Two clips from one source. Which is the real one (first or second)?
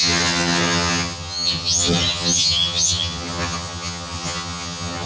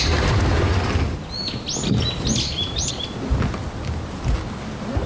second